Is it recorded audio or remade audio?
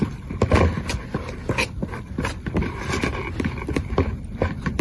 recorded